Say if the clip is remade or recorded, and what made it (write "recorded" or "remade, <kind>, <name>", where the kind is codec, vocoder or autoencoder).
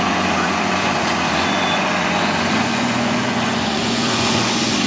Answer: remade, vocoder, Vocos